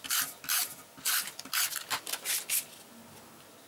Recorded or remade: recorded